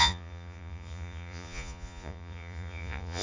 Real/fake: fake